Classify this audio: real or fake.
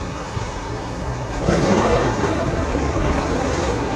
fake